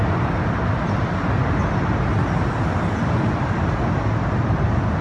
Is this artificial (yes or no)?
no